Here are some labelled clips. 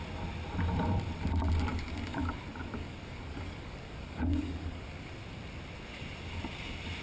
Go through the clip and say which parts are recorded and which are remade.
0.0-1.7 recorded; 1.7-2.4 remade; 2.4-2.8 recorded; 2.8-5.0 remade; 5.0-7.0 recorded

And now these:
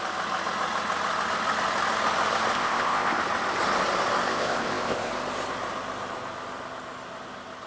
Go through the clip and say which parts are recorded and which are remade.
0.0-2.5 recorded; 2.5-3.2 remade; 3.2-4.3 recorded; 4.3-5.1 remade; 5.1-7.7 recorded

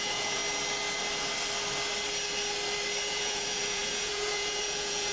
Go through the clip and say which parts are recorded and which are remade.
0.0-0.4 remade; 0.4-3.1 recorded; 3.1-5.1 remade

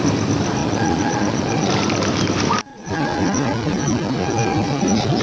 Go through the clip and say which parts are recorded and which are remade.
0.0-0.6 recorded; 0.6-1.7 remade; 1.7-2.7 recorded; 2.7-5.2 remade